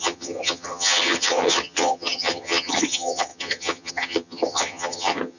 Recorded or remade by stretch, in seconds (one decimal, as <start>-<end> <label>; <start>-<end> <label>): 0.0-5.4 remade